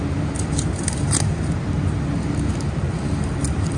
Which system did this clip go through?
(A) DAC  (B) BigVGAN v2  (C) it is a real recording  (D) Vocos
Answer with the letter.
B